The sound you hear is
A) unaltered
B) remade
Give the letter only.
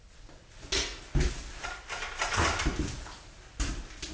A